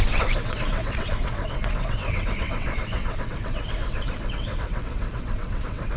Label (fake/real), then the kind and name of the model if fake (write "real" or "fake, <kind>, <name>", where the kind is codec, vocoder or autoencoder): fake, vocoder, WaveNeXt